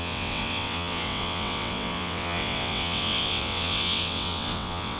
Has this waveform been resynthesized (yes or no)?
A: yes